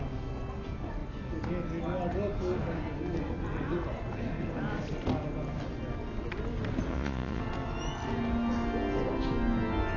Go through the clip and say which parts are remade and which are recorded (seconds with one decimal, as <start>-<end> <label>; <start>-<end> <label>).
0.0-6.9 recorded; 6.9-7.4 remade; 7.4-10.0 recorded